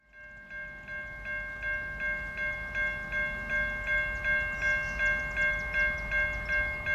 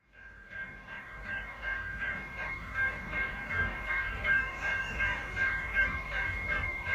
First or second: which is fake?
second